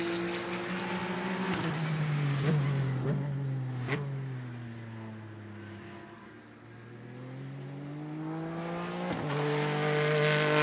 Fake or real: real